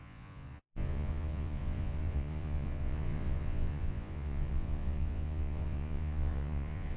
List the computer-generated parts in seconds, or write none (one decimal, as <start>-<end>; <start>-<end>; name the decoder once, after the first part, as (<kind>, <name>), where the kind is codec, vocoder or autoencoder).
0.0-7.0 (vocoder, Vocos)